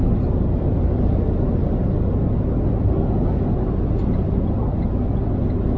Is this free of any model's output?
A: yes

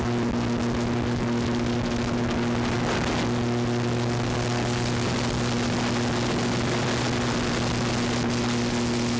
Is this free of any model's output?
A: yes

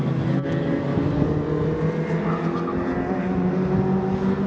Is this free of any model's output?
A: yes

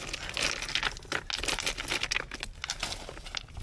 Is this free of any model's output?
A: yes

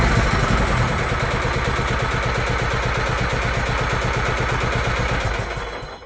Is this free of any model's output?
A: yes